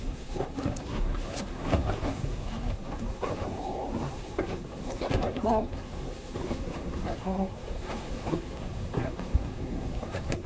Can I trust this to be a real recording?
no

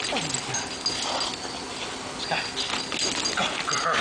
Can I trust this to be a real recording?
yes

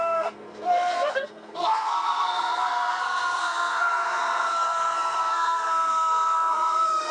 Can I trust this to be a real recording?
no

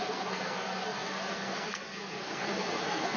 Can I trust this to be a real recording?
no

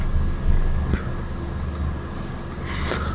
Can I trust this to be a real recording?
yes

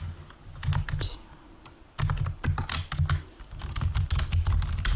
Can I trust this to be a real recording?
yes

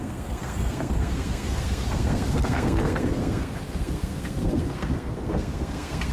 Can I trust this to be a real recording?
no